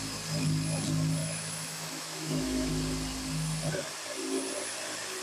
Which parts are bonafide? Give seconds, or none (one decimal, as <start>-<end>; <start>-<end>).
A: 0.0-1.2; 2.7-5.2